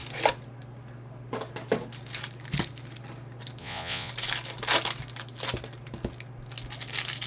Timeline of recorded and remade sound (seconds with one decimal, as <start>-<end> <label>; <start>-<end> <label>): 0.0-3.6 recorded; 3.6-4.1 remade; 4.1-7.3 recorded